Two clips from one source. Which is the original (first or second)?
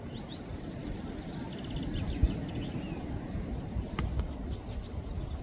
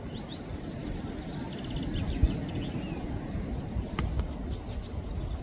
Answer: second